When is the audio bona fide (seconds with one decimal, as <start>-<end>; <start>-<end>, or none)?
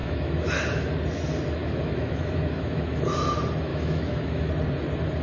0.5-1.6; 3.0-3.7; 4.5-5.2